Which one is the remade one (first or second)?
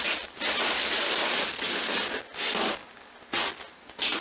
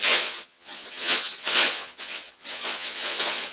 second